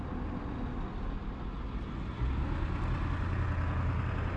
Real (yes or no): yes